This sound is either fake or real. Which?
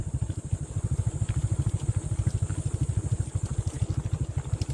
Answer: real